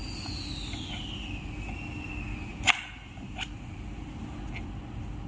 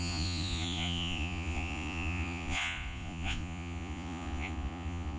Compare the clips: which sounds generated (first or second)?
second